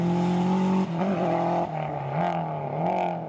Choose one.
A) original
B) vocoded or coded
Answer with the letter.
A